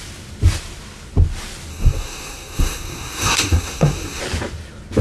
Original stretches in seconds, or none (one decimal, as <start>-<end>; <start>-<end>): 0.0-1.7; 4.2-5.0